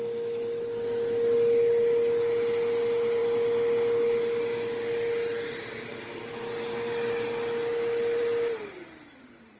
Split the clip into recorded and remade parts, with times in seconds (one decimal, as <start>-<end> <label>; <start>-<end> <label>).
0.0-9.6 recorded